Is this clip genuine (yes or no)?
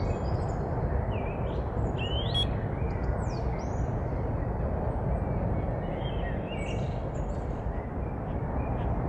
yes